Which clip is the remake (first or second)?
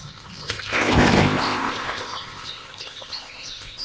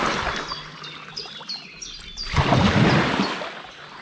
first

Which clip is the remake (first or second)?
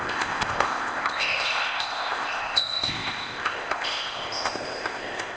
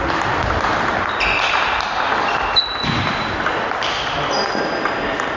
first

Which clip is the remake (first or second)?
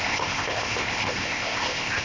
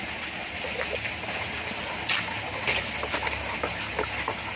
first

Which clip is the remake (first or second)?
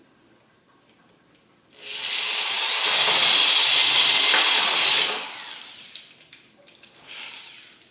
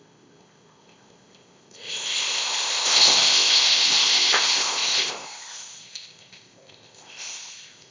second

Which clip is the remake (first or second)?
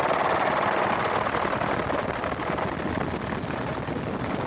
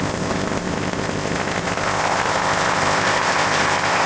second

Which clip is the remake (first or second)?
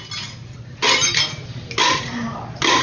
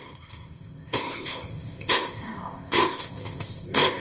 second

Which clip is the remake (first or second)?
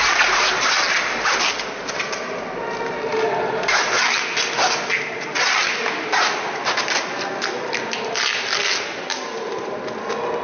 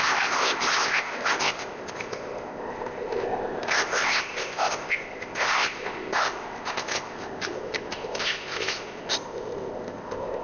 second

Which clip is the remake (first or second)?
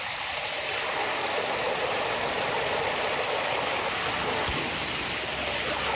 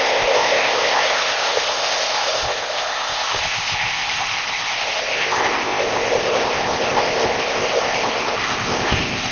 second